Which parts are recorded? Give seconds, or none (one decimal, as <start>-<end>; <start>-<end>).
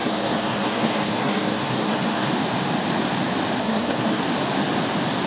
2.3-3.6; 4.2-5.3